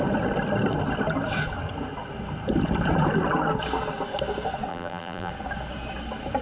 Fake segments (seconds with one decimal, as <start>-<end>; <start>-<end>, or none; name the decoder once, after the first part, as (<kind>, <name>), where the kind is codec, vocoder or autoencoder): 4.7-5.3 (vocoder, BigVGAN v2)